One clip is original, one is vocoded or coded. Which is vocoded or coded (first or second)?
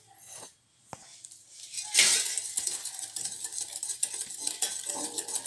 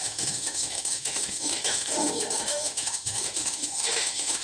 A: second